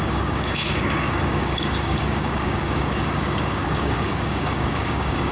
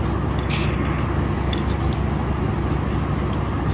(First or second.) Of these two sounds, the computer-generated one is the first